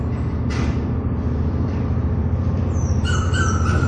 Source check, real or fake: real